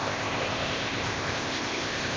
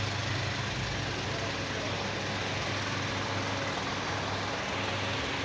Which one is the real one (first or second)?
second